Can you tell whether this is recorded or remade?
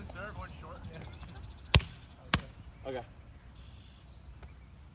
recorded